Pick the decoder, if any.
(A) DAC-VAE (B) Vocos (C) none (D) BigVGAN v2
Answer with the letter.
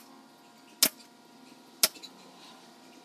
C